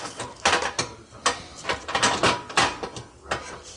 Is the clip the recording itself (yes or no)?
yes